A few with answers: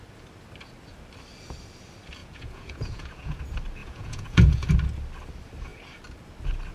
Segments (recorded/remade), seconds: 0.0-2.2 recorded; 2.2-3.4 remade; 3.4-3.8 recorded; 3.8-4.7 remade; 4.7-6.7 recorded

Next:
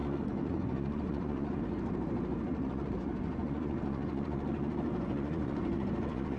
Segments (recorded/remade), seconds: 0.0-1.6 remade; 1.6-2.5 recorded; 2.5-6.4 remade

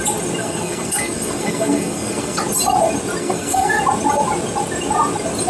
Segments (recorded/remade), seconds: 0.0-0.4 recorded; 0.4-2.4 remade; 2.4-3.2 recorded; 3.2-3.8 remade; 3.8-5.5 recorded

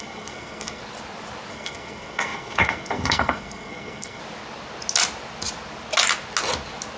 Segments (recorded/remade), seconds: 0.0-0.8 remade; 0.8-1.5 recorded; 1.5-4.2 remade; 4.2-7.0 recorded

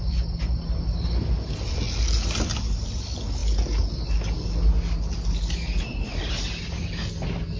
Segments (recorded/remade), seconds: 0.0-7.6 recorded

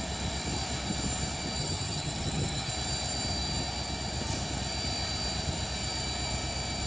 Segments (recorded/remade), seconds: 0.0-1.6 recorded; 1.6-2.7 remade; 2.7-6.9 recorded

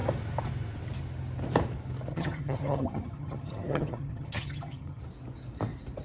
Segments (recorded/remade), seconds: 0.0-2.1 recorded; 2.1-5.0 remade; 5.0-6.0 recorded